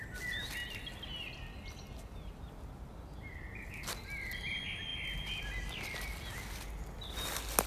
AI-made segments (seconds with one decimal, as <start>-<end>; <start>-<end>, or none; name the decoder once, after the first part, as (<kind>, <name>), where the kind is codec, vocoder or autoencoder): none